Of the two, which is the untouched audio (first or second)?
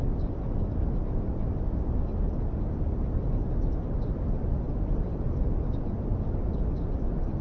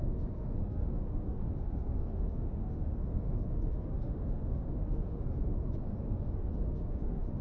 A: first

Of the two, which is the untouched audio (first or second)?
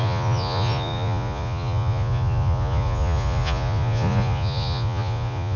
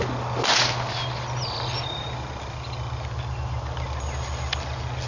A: second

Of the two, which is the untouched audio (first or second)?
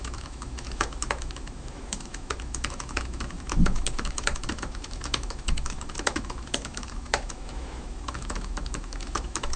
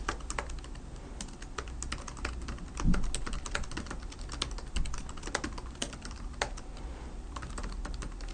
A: second